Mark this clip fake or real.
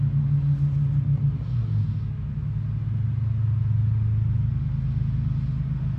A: real